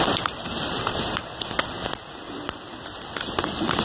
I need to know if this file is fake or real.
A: real